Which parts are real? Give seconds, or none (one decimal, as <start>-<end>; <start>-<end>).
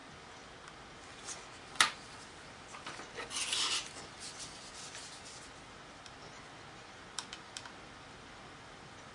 0.0-9.1